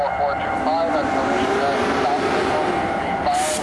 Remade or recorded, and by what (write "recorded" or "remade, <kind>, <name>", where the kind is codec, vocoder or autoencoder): recorded